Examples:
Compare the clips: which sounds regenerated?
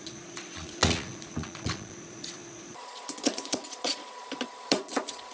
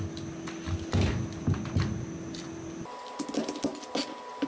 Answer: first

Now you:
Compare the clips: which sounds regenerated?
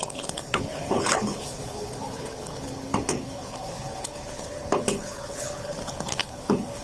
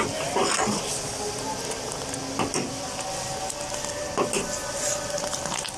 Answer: first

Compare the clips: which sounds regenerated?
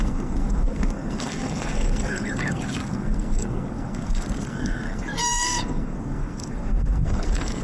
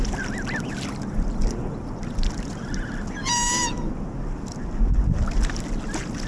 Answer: first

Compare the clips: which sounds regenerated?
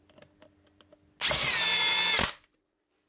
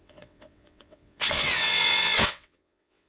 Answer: second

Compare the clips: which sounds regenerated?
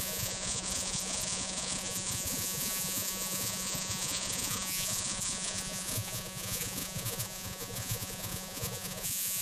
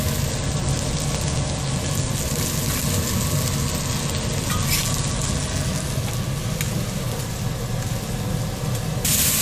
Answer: first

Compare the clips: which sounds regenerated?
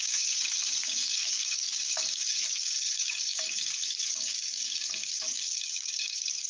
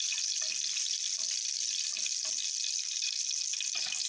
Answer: first